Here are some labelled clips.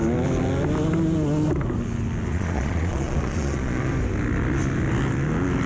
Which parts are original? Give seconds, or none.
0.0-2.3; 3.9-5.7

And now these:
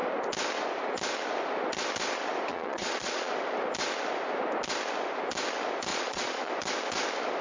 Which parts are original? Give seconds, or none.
0.0-2.5; 3.3-5.9; 6.5-7.4

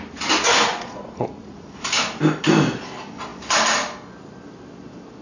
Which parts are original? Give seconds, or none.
0.0-0.7; 1.7-5.2

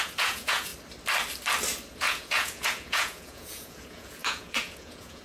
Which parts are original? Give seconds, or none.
0.7-2.0

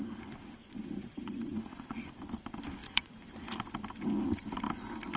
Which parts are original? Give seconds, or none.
0.0-0.6; 2.1-2.8; 3.3-5.2

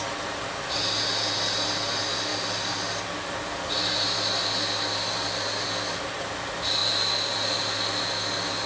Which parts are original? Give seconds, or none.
0.0-8.7

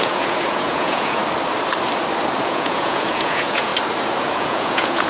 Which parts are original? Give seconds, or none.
1.2-2.4; 3.7-4.2